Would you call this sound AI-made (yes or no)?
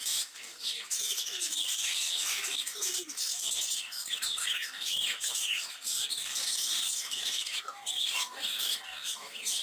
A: yes